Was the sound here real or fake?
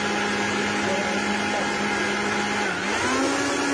real